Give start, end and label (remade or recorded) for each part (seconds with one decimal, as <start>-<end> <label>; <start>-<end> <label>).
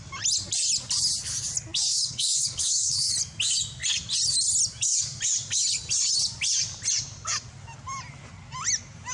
0.0-1.9 recorded; 1.9-3.1 remade; 3.1-9.1 recorded